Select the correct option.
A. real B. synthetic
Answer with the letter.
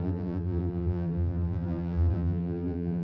B